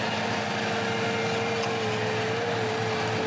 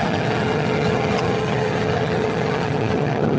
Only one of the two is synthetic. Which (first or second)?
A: second